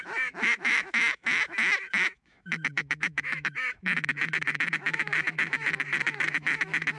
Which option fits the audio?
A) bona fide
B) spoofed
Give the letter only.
B